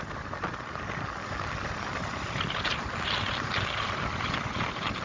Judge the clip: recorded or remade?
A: recorded